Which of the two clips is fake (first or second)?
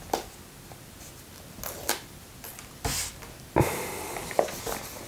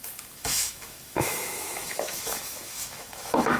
second